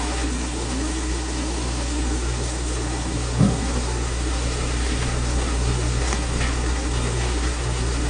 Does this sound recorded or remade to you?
remade